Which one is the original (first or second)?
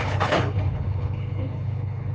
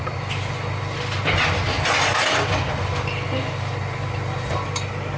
second